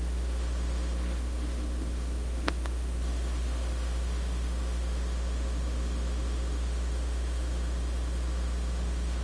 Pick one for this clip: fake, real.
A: fake